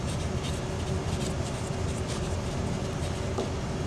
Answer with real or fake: real